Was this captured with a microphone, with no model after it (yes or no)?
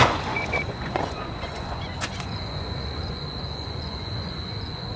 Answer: no